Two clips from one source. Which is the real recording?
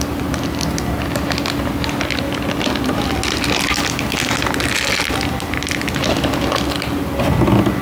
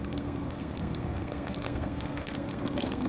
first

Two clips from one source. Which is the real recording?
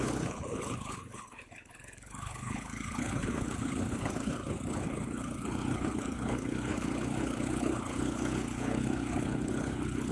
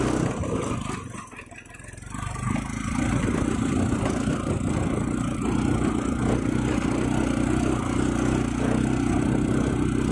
second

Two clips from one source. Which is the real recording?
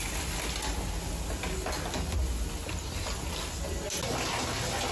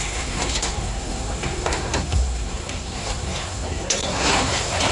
first